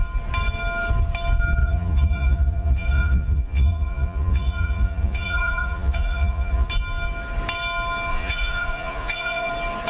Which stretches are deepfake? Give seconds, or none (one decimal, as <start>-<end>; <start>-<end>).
1.6-6.7; 8.1-9.5